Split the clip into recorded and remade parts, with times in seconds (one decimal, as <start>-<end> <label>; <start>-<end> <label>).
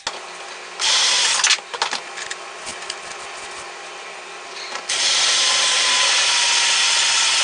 0.0-7.4 recorded